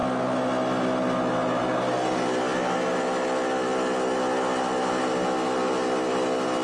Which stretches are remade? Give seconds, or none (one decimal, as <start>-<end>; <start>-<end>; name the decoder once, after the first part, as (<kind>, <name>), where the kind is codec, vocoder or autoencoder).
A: none